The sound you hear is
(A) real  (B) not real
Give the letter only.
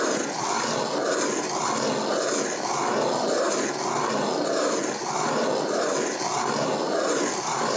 A